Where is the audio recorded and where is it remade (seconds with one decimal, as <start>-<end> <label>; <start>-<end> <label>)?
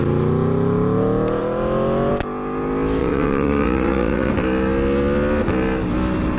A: 0.0-3.0 recorded; 3.0-4.3 remade; 4.3-6.4 recorded